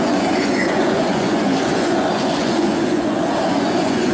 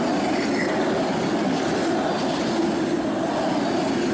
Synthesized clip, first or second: first